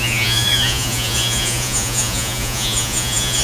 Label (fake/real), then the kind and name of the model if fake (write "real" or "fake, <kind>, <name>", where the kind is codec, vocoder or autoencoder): fake, vocoder, Vocos